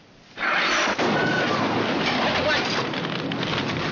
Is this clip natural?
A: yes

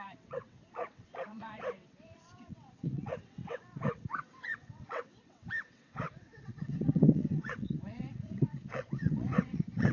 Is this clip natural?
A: no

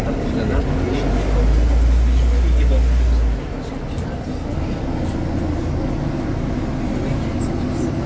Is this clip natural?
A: yes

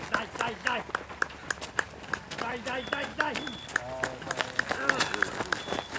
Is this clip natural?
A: yes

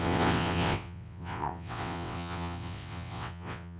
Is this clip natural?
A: no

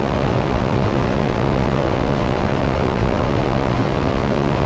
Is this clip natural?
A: no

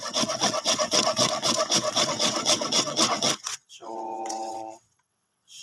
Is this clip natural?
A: no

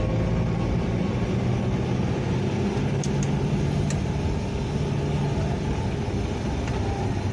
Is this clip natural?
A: yes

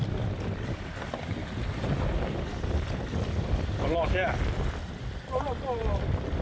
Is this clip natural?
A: yes